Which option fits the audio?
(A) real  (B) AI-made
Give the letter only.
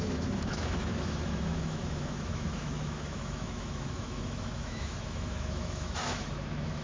B